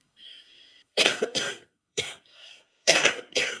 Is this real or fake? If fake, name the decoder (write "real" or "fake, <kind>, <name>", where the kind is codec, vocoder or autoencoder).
fake, codec, SNAC